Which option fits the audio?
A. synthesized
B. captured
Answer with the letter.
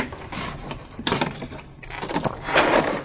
B